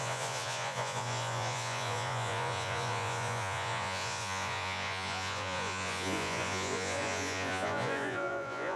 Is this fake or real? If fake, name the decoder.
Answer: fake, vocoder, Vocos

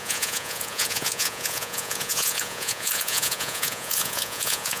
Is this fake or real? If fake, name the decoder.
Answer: fake, vocoder, Vocos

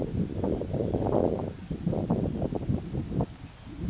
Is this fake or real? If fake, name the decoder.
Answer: real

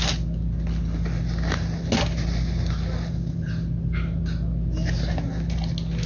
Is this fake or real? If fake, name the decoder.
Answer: real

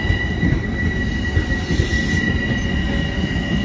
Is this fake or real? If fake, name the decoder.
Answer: real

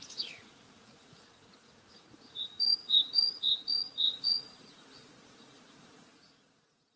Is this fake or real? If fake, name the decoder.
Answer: fake, vocoder, Vocos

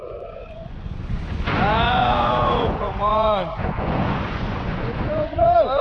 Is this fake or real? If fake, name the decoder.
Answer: fake, vocoder, Vocos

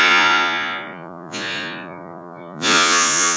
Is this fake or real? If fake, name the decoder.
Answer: fake, vocoder, Vocos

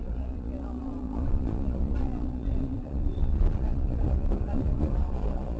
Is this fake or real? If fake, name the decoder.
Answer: fake, vocoder, Vocos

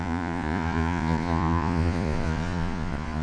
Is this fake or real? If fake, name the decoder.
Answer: fake, vocoder, Vocos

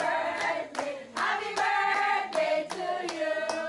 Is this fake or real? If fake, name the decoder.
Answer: real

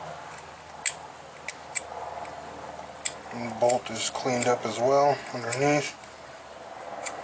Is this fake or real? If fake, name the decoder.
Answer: real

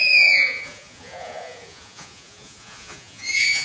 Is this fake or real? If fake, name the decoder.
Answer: fake, vocoder, Vocos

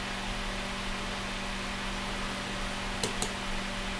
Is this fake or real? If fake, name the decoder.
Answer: real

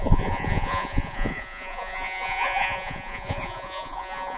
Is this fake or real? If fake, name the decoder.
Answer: fake, vocoder, Vocos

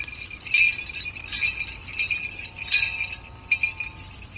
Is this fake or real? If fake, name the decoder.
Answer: real